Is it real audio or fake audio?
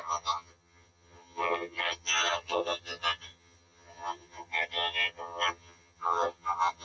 fake